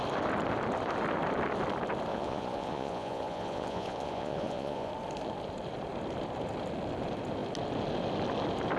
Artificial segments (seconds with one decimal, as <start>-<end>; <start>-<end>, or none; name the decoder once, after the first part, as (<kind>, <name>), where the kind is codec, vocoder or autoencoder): 2.1-4.9 (vocoder, Vocos)